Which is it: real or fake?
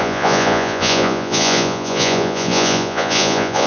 fake